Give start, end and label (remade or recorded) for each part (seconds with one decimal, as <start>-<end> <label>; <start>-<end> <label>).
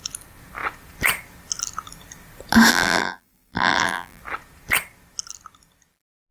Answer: 0.0-2.7 recorded; 2.7-4.2 remade; 4.2-6.3 recorded